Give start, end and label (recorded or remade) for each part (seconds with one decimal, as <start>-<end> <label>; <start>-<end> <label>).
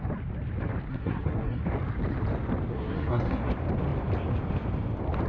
0.0-0.9 recorded; 0.9-1.6 remade; 1.6-2.7 recorded; 2.7-3.5 remade; 3.5-5.3 recorded